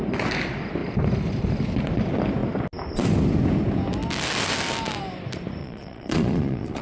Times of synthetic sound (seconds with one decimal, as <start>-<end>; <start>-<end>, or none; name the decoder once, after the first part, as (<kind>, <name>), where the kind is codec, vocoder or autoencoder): 5.6-6.8 (vocoder, Vocos)